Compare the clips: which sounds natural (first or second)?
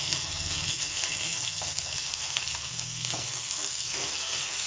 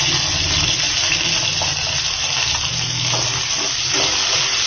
second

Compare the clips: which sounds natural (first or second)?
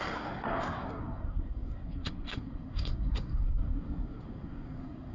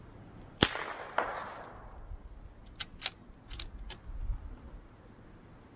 second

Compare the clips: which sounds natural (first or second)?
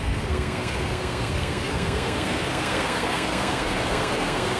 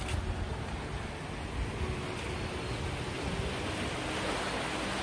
second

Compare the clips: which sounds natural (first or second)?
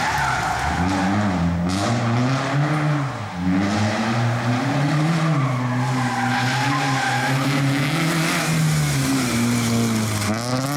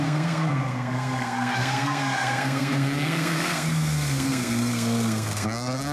first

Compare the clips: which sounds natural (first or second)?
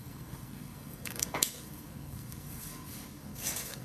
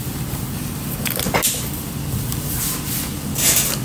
second